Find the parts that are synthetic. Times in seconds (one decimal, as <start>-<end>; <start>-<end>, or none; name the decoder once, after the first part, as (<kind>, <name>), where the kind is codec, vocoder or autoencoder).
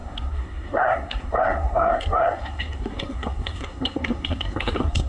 0.0-5.1 (codec, SNAC)